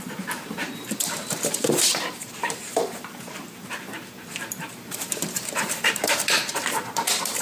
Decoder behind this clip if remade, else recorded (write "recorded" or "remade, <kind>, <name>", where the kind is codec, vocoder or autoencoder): remade, vocoder, BigVGAN v2